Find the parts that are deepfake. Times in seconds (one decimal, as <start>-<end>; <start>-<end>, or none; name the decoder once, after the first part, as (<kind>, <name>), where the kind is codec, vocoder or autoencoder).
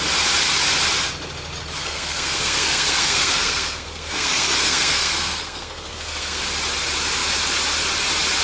1.8-6.4 (codec, SNAC)